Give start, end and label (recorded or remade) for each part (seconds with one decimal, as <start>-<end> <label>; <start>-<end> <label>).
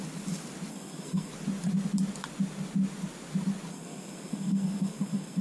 0.0-0.7 recorded; 0.7-1.3 remade; 1.3-3.7 recorded; 3.7-5.4 remade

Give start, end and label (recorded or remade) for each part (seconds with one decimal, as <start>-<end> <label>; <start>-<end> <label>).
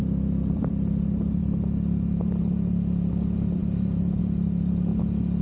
0.0-4.9 remade; 4.9-5.4 recorded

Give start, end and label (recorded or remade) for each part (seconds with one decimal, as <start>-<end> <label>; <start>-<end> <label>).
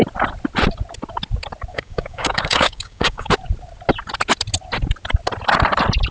0.0-1.7 recorded; 1.7-3.3 remade; 3.3-6.1 recorded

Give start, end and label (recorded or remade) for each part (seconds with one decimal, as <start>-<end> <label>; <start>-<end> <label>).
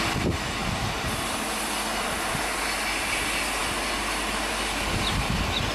0.0-5.7 recorded